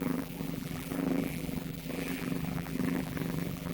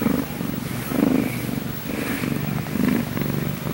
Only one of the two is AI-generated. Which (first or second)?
first